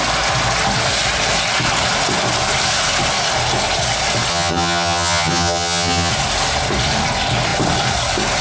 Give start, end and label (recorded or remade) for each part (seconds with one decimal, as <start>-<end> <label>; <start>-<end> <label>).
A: 0.0-4.3 recorded; 4.3-6.1 remade; 6.1-8.4 recorded